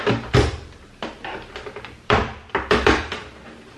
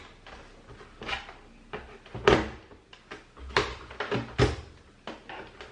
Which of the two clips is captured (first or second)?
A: second